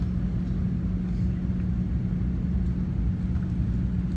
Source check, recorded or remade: recorded